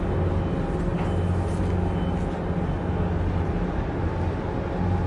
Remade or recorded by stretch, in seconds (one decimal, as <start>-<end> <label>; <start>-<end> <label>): 0.0-5.1 recorded